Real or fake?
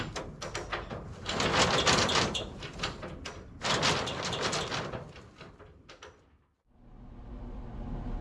real